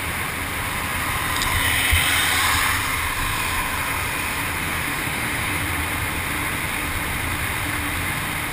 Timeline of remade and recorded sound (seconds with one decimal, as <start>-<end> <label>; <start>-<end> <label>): 0.0-4.6 recorded; 4.6-5.6 remade; 5.6-8.5 recorded